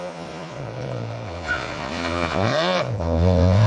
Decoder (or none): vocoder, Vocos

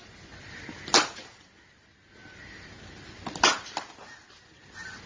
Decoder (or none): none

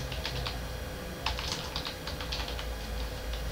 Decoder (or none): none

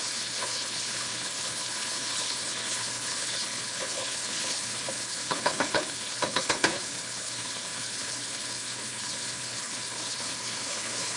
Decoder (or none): codec, HILCodec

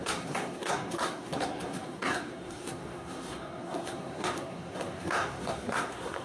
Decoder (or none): codec, SNAC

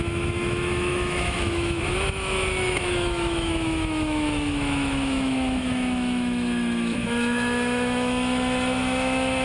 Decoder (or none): autoencoder, DAC-VAE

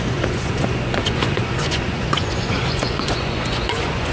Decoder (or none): vocoder, Vocos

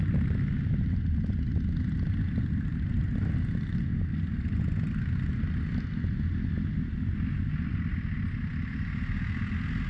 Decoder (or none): none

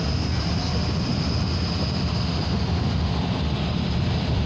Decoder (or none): none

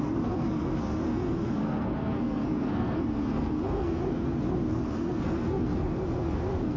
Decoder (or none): codec, SNAC